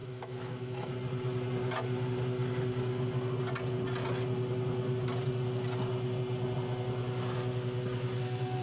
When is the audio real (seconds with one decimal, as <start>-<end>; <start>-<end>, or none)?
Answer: 0.9-8.6